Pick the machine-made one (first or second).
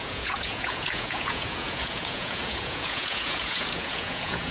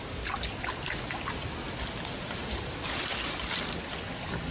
first